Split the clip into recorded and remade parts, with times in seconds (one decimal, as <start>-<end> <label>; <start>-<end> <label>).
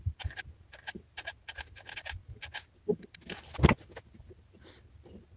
0.0-5.4 recorded